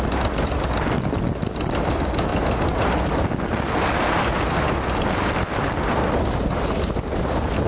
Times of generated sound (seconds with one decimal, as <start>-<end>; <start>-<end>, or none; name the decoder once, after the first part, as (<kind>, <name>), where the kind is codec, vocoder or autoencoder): none